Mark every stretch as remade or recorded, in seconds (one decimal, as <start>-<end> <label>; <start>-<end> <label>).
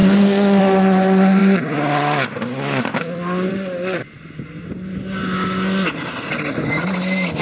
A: 0.0-7.4 recorded